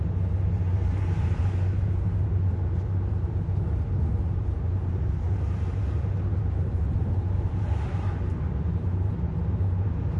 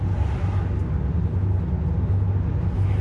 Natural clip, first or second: second